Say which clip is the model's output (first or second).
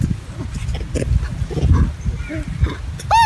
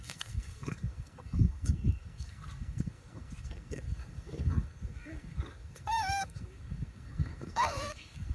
second